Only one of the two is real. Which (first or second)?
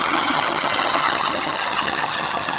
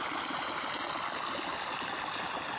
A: second